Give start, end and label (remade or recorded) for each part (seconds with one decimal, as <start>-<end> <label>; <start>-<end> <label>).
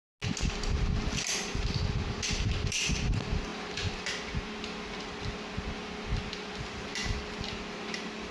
0.0-8.3 recorded